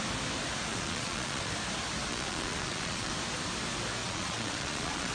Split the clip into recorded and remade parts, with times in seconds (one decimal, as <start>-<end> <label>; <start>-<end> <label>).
0.0-0.7 recorded; 0.7-1.5 remade; 1.5-2.1 recorded; 2.1-3.1 remade; 3.1-4.0 recorded; 4.0-5.1 remade